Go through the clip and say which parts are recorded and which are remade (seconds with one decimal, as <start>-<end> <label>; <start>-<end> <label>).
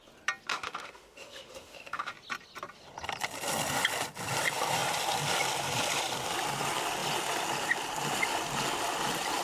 0.0-0.5 recorded; 0.5-2.1 remade; 2.1-9.4 recorded